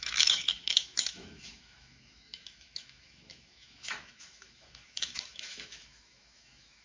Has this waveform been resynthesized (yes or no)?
yes